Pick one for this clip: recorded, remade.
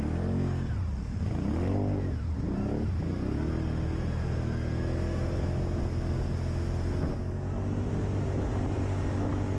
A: recorded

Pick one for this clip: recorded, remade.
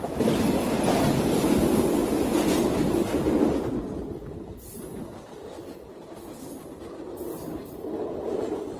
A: recorded